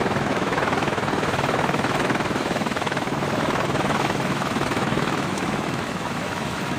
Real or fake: fake